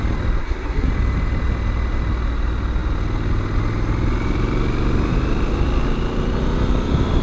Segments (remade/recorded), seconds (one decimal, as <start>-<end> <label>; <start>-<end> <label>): 0.0-0.4 recorded; 0.4-0.9 remade; 0.9-7.2 recorded